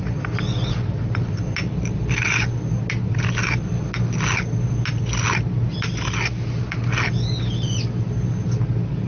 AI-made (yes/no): no